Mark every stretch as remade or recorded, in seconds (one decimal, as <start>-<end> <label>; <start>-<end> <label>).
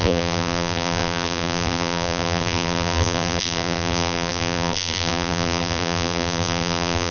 0.0-7.1 remade